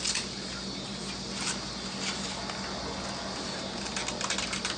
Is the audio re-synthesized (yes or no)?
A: no